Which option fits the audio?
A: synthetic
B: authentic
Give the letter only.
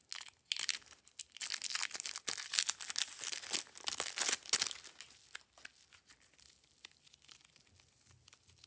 B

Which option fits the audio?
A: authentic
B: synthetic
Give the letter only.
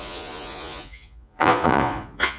B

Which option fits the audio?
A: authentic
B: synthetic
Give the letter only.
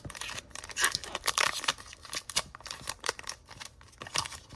B